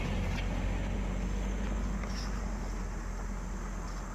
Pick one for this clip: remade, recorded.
recorded